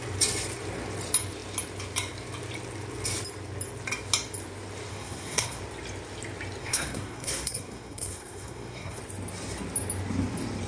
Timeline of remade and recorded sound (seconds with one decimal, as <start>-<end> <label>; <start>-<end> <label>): 0.0-4.9 recorded; 4.9-5.6 remade; 5.6-6.6 recorded; 6.6-9.0 remade; 9.0-10.7 recorded